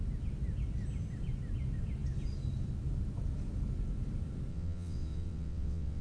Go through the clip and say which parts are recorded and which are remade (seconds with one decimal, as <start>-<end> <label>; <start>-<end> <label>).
0.0-4.5 recorded; 4.5-6.0 remade